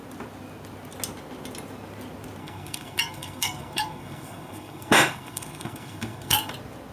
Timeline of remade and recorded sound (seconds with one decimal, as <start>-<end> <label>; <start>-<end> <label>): 0.0-2.4 recorded; 2.4-6.5 remade; 6.5-6.9 recorded